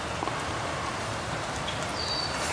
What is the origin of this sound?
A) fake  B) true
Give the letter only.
B